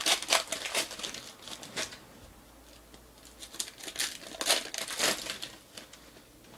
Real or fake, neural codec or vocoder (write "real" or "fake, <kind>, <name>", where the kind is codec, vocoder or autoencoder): real